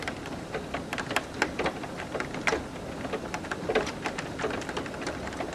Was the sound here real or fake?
real